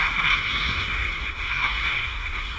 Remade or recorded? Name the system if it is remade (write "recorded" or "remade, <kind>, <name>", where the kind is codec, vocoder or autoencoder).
remade, codec, SNAC